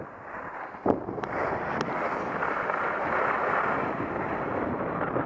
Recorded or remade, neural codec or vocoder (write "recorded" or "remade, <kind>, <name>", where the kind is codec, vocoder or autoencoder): recorded